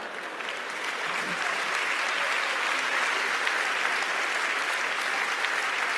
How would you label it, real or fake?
real